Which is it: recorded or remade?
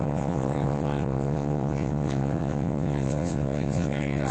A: remade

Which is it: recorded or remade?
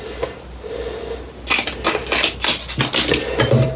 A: recorded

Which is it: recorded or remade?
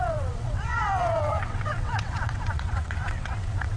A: remade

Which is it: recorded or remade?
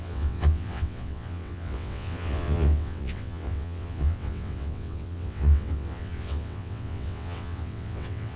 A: remade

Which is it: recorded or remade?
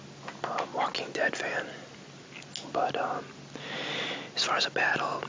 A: recorded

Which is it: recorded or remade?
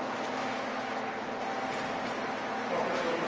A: recorded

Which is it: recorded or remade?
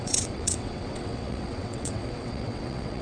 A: remade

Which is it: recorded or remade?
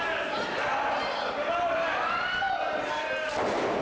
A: recorded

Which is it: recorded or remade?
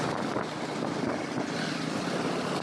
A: recorded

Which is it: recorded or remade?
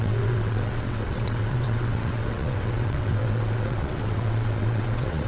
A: remade